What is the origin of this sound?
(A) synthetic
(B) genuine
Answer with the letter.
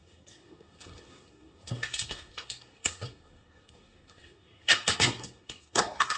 A